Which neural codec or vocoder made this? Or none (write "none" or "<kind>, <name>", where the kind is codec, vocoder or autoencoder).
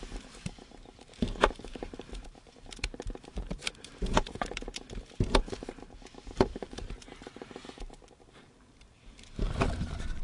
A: vocoder, BigVGAN v2